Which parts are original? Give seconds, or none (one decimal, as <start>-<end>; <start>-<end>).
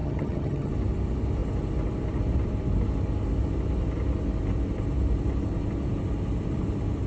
0.7-7.1